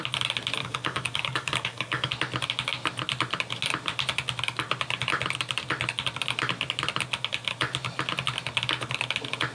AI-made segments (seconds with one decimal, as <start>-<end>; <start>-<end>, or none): 0.6-2.1